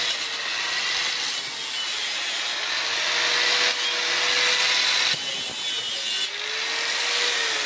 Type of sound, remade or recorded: recorded